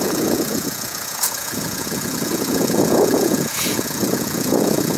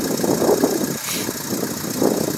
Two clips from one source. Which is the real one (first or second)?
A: second